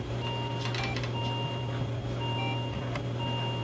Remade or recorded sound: recorded